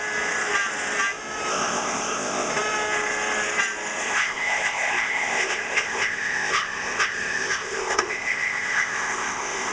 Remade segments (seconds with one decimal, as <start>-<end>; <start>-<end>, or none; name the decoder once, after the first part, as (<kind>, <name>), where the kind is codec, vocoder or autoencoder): 1.5-2.5 (codec, ZipCodec); 4.0-9.7